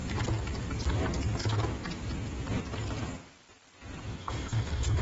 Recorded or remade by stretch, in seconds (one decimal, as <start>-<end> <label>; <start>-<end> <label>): 0.0-4.2 recorded; 4.2-5.0 remade